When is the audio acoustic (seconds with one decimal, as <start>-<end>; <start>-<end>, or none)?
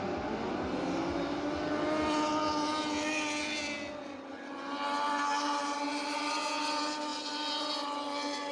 0.0-8.5